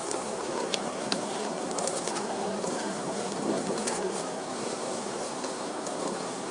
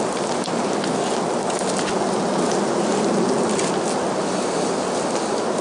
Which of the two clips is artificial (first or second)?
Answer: first